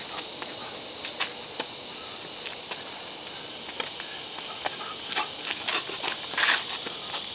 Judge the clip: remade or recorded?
recorded